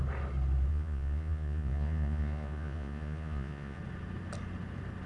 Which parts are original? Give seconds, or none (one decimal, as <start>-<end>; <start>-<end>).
0.0-0.7; 3.8-5.1